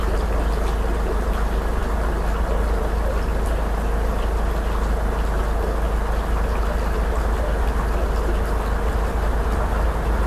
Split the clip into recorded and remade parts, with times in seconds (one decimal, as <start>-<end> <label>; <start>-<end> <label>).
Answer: 0.0-10.3 recorded